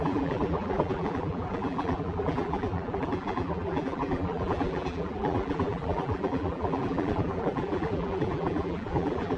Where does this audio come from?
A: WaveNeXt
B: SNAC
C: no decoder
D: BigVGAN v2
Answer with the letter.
D